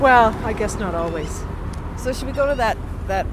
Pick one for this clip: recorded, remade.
recorded